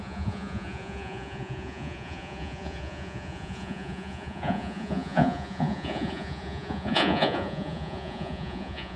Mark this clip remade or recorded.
remade